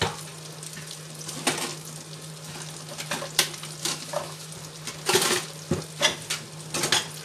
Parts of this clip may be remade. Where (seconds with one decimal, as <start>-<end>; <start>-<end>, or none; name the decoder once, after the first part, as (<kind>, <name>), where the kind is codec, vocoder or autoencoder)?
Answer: 3.8-4.5 (autoencoder, DAC-VAE)